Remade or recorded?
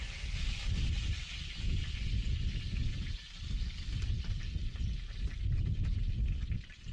recorded